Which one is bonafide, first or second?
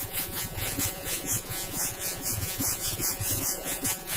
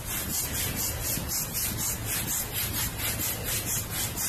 second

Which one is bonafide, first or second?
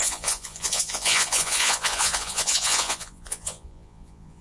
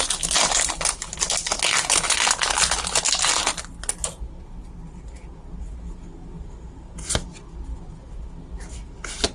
second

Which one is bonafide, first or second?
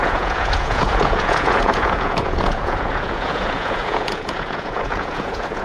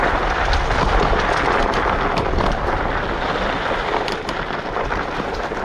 second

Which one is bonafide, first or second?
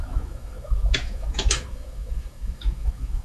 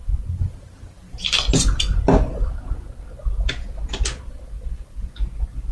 second